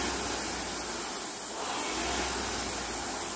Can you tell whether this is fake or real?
real